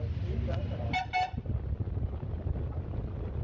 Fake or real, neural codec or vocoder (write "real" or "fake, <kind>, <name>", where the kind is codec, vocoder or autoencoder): real